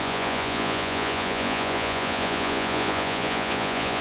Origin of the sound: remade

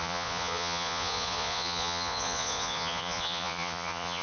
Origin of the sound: remade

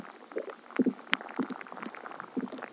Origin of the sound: recorded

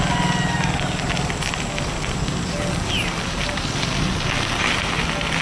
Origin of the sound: recorded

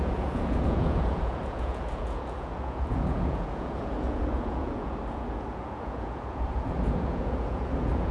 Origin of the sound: remade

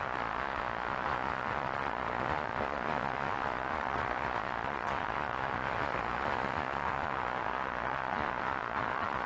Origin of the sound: remade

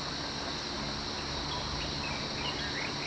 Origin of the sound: recorded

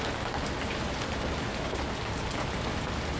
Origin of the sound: recorded